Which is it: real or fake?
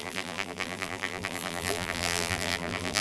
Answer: fake